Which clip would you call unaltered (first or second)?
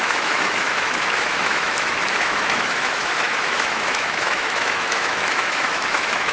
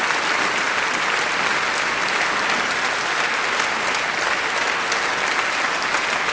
second